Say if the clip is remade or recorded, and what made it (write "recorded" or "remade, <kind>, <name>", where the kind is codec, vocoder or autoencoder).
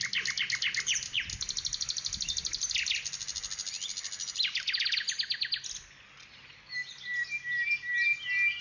recorded